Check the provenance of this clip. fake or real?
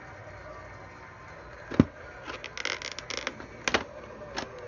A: real